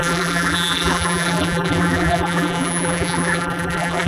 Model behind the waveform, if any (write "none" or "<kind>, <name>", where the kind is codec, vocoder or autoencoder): vocoder, BigVGAN v2